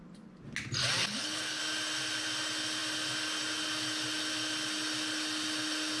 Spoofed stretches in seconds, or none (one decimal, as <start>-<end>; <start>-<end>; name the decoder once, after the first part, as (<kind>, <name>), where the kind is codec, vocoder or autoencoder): 1.0-1.6 (codec, HILCodec)